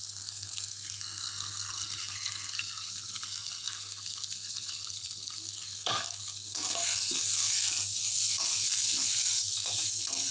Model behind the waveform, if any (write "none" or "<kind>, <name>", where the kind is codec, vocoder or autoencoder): codec, SNAC